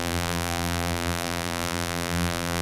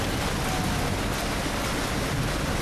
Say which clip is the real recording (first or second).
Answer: second